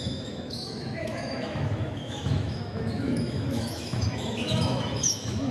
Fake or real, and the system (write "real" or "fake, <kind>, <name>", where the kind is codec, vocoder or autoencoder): fake, autoencoder, DAC-VAE